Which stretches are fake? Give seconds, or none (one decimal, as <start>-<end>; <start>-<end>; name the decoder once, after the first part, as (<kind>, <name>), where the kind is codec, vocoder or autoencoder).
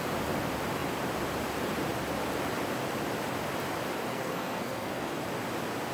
4.1-5.2 (codec, SNAC)